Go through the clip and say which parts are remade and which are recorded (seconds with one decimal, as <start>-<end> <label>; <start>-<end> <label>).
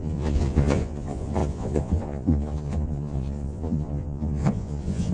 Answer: 0.0-5.1 remade